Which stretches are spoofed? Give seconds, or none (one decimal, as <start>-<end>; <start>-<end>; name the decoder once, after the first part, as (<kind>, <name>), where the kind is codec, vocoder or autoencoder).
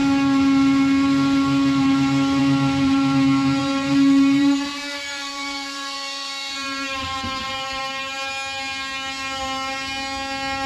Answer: 3.6-7.8 (vocoder, BigVGAN v2)